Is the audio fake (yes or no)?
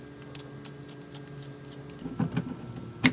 no